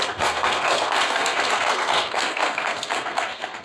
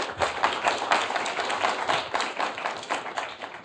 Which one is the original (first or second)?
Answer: second